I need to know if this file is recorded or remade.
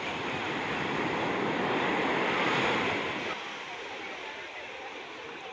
recorded